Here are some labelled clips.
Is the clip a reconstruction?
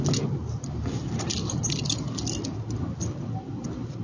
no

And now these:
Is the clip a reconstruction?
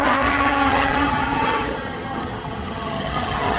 yes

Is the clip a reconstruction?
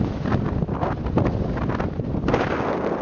no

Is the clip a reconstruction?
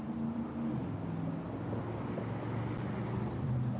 no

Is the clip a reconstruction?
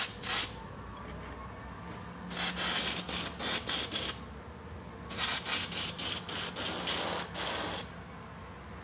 no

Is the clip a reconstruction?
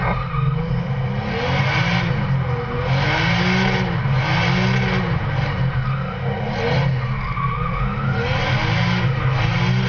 no